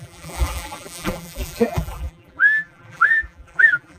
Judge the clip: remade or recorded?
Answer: remade